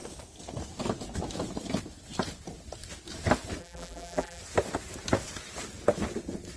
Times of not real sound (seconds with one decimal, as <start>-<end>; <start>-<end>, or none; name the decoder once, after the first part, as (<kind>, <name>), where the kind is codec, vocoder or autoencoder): 3.6-4.4 (vocoder, BigVGAN v2)